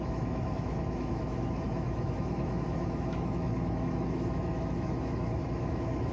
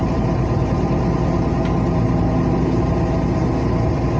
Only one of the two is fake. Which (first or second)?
first